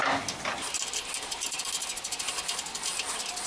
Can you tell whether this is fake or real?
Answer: real